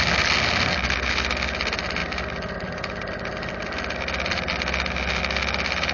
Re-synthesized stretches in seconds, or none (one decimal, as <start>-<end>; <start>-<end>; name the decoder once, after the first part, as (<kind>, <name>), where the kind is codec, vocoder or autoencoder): none